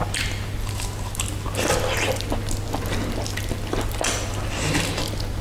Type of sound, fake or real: real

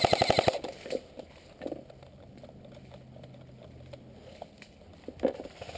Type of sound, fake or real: real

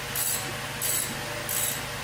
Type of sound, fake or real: real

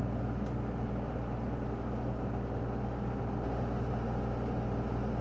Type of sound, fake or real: real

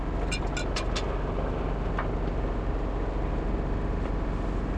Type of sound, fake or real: real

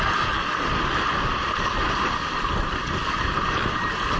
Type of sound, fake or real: real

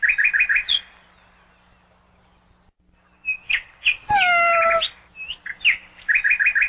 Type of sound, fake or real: real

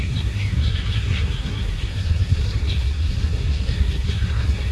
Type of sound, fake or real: fake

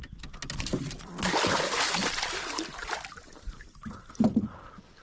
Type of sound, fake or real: real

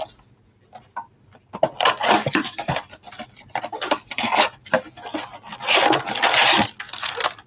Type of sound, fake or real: real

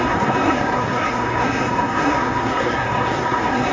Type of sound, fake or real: fake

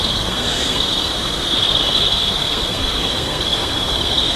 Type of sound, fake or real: fake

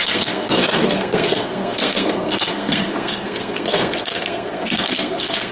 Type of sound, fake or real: fake